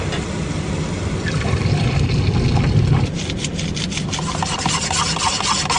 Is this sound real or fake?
real